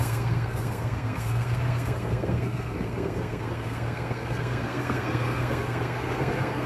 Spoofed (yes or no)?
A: yes